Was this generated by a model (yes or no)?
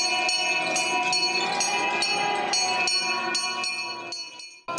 no